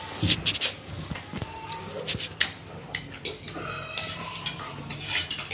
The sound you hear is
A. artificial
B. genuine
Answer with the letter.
B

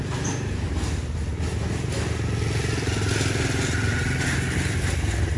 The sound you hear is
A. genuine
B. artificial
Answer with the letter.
A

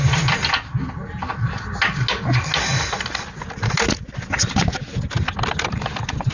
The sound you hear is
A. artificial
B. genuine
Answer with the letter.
B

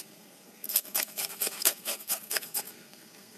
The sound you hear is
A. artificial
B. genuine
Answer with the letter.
A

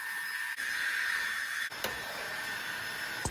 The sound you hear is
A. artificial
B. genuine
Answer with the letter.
B